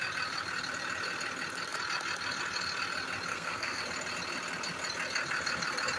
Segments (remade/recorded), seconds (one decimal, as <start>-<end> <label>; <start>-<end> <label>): 0.0-3.3 recorded; 3.3-3.8 remade; 3.8-6.0 recorded